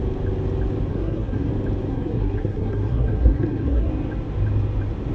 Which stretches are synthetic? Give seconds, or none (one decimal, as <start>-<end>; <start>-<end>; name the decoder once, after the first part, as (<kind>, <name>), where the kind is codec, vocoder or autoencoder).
0.9-1.5 (codec, SNAC); 1.9-3.9